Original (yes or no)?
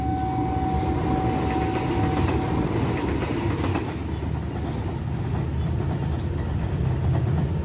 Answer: yes